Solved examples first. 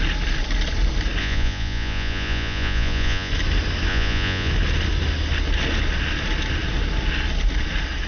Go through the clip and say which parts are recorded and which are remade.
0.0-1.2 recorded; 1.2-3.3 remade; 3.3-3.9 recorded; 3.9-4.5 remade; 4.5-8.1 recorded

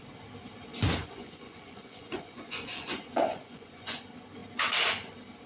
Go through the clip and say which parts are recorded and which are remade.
0.0-0.7 recorded; 0.7-4.0 remade; 4.0-5.5 recorded

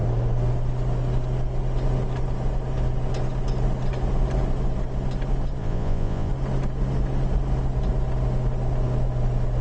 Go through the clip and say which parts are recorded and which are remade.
0.0-5.6 recorded; 5.6-6.3 remade; 6.3-9.6 recorded

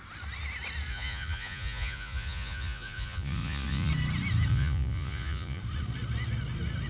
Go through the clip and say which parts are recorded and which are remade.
0.0-0.9 recorded; 0.9-3.9 remade; 3.9-4.5 recorded; 4.5-5.6 remade; 5.6-6.9 recorded